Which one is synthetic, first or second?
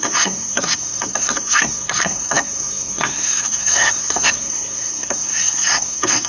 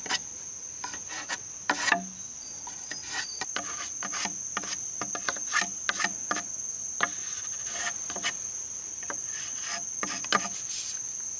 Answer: first